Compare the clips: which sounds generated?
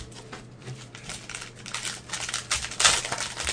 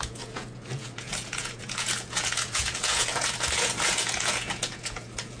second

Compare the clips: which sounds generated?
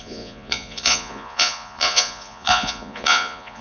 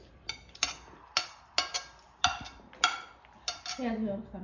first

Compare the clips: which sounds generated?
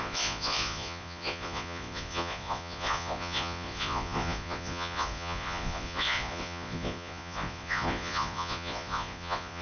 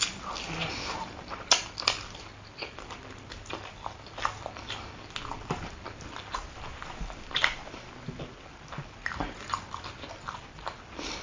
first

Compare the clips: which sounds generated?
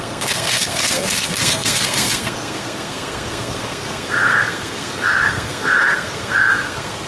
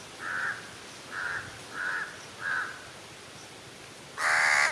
first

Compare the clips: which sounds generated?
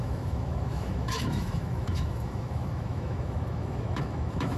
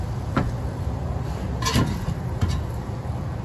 first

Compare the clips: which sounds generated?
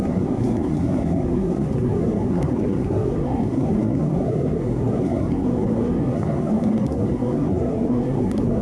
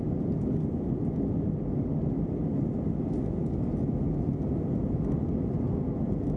first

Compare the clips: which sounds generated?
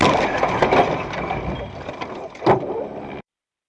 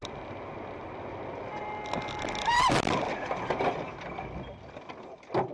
first